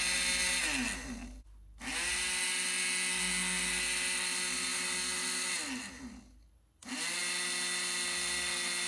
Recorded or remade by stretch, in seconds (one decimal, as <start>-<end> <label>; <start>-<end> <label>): 0.0-8.9 recorded